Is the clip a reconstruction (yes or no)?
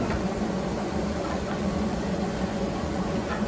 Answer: yes